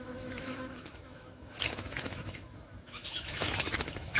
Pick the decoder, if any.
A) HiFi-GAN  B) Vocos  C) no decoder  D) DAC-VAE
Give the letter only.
D